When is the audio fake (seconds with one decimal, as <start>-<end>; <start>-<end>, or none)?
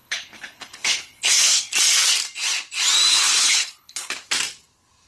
0.0-1.7; 3.1-4.1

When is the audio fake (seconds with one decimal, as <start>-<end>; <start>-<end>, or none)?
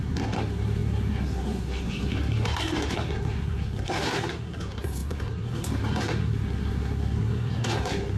0.0-8.2